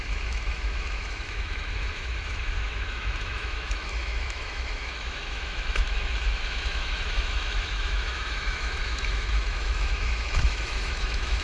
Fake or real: fake